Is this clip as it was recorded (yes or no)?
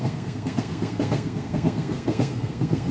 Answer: no